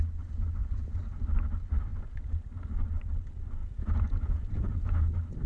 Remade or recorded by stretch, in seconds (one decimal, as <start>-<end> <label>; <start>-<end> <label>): 0.0-0.6 recorded; 0.6-1.1 remade; 1.1-3.6 recorded; 3.6-5.1 remade; 5.1-5.5 recorded